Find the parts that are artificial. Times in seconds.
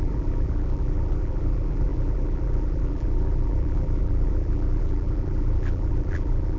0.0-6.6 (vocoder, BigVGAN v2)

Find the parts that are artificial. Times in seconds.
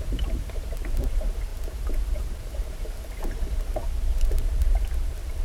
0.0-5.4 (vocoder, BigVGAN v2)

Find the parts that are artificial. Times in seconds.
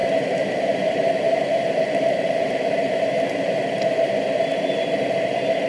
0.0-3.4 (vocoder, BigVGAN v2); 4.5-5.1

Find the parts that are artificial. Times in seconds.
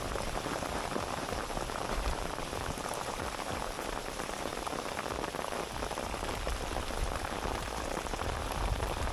0.0-4.5 (vocoder, BigVGAN v2); 7.5-9.1